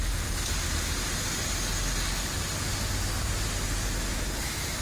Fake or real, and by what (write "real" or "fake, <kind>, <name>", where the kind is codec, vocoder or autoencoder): real